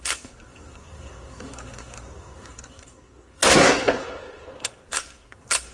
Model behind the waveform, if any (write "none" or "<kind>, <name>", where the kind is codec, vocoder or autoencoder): codec, SNAC